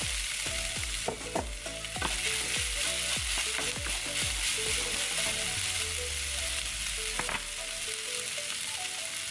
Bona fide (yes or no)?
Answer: yes